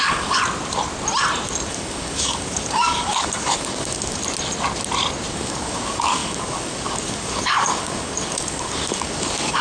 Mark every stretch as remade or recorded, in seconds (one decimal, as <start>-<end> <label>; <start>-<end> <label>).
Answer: 0.0-0.4 remade; 0.4-1.7 recorded; 1.7-4.2 remade; 4.2-5.3 recorded; 5.3-9.6 remade